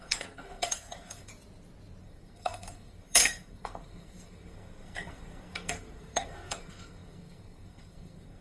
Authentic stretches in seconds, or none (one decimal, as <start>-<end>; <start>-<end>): 1.3-2.0